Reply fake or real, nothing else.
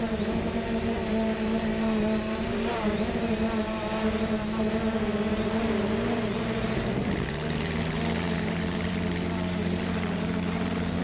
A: fake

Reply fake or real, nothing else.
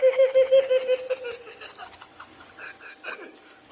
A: real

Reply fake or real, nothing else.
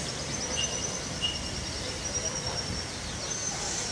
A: real